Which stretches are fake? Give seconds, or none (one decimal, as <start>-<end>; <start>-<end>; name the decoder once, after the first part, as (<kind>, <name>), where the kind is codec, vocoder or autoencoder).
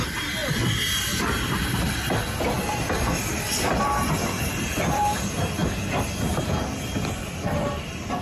0.0-5.6 (vocoder, BigVGAN v2); 6.8-8.2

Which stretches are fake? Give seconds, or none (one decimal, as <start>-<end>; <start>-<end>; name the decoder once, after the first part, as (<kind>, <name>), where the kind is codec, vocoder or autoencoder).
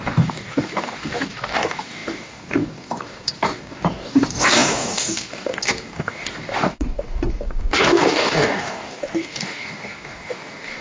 0.0-10.8 (codec, DAC)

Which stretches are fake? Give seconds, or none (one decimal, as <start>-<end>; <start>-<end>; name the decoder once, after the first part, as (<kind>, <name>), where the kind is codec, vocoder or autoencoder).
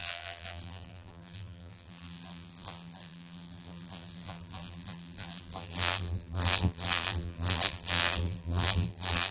0.0-9.3 (vocoder, BigVGAN v2)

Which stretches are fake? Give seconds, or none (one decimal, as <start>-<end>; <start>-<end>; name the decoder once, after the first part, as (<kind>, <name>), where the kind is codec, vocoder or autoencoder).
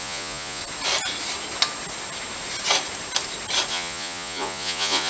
0.0-0.6 (vocoder, Vocos); 3.7-5.1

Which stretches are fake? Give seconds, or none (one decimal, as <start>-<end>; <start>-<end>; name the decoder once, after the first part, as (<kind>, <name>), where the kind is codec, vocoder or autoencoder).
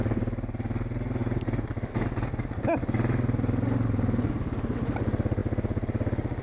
none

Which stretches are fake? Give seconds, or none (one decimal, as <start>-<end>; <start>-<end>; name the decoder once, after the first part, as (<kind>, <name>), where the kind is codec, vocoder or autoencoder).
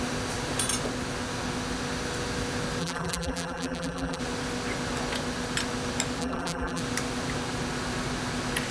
2.8-4.2 (vocoder, BigVGAN v2); 6.2-6.8